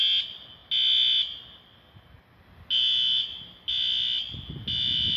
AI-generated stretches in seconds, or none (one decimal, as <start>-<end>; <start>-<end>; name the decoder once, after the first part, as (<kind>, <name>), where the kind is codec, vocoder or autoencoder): none